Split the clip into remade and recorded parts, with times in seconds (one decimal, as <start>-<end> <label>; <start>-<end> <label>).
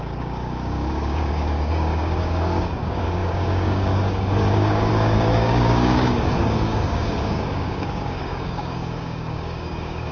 0.0-10.1 remade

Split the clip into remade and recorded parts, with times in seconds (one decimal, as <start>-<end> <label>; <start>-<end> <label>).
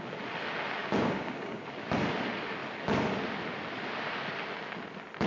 0.0-0.8 recorded; 0.8-1.6 remade; 1.6-5.3 recorded